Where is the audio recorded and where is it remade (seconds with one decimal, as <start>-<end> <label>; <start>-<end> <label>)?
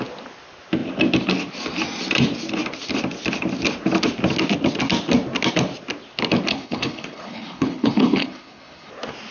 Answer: 0.0-6.5 recorded; 6.5-8.9 remade; 8.9-9.3 recorded